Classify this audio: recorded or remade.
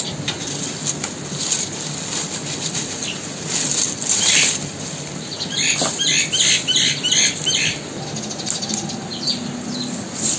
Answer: recorded